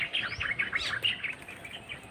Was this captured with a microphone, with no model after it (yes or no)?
yes